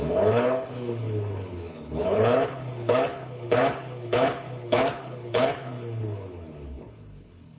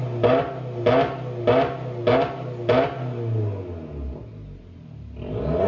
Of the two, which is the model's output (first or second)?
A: first